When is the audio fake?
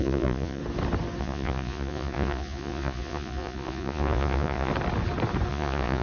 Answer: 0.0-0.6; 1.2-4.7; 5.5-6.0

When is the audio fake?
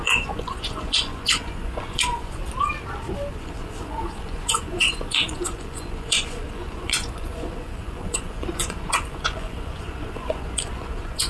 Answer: 0.0-2.4; 3.3-11.3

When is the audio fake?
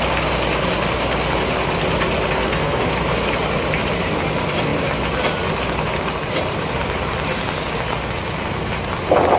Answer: 2.4-2.9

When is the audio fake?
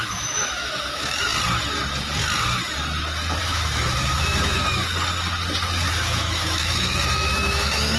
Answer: 0.0-1.3; 3.4-4.8; 5.9-8.0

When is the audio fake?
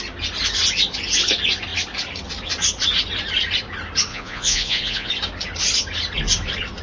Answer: 4.1-5.1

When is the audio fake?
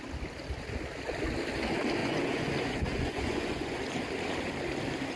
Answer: 2.0-3.8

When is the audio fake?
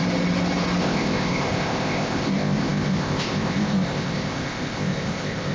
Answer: 0.8-5.5